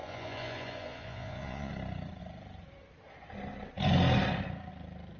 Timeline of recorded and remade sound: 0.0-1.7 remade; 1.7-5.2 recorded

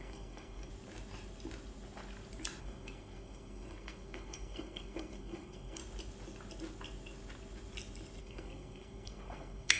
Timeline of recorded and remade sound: 0.0-0.7 remade; 0.7-2.6 recorded; 2.6-5.8 remade; 5.8-8.2 recorded; 8.2-9.8 remade

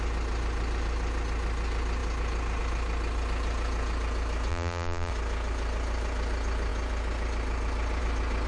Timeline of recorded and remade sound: 0.0-4.5 recorded; 4.5-5.1 remade; 5.1-8.5 recorded